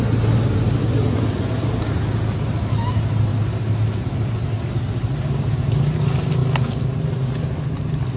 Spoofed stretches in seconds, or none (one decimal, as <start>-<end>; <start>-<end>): none